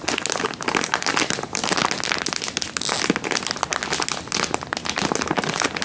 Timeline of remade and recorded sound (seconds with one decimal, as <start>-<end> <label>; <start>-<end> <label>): 0.0-5.8 recorded